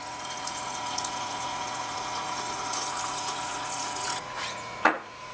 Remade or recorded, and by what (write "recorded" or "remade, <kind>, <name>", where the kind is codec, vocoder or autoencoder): remade, vocoder, Vocos